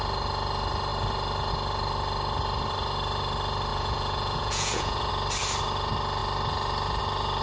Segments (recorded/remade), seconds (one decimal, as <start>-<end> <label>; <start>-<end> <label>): 0.0-3.7 recorded; 3.7-5.1 remade; 5.1-7.4 recorded